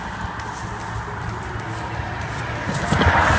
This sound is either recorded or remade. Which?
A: recorded